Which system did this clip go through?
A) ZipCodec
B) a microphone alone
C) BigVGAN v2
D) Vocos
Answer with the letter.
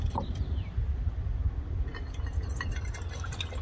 B